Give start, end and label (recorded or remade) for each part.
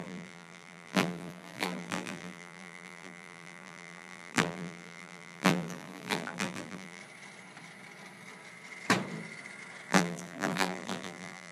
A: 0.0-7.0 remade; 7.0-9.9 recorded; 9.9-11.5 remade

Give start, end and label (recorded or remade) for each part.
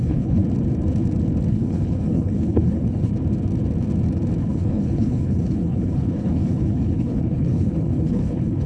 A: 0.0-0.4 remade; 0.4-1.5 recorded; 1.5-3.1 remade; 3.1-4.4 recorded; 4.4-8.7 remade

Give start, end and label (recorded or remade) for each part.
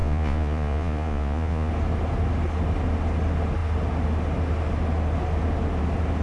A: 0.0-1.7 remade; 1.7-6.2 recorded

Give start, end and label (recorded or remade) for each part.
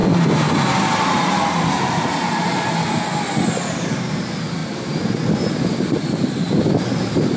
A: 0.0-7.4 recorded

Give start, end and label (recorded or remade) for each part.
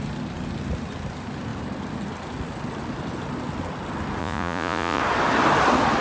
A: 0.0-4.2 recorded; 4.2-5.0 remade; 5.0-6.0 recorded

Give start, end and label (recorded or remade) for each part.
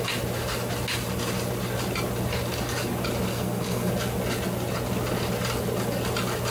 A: 0.0-3.3 recorded; 3.3-3.9 remade; 3.9-6.5 recorded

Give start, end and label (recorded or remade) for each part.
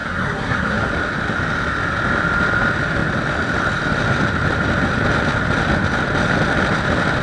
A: 0.0-0.9 remade; 0.9-7.2 recorded